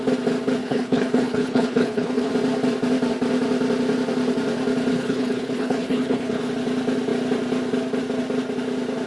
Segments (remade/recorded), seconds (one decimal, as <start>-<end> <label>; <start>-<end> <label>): 0.0-0.6 recorded; 0.6-2.3 remade; 2.3-4.9 recorded; 4.9-6.5 remade; 6.5-9.1 recorded